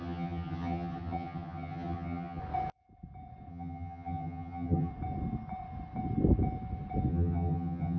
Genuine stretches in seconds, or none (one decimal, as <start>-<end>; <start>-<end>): 2.4-3.5; 4.9-7.1